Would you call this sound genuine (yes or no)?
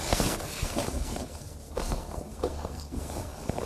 no